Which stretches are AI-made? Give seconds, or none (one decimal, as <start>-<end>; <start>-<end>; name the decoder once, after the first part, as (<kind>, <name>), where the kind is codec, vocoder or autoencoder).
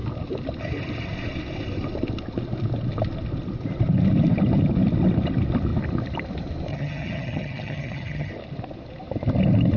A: 6.7-8.3 (vocoder, HiFi-GAN)